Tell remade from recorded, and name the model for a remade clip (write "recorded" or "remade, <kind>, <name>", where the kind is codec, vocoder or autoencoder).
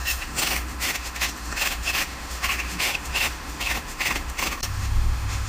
remade, autoencoder, DAC-VAE